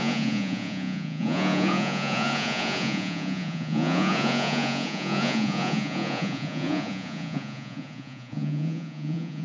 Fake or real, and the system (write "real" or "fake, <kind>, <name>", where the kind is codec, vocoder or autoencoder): fake, vocoder, Vocos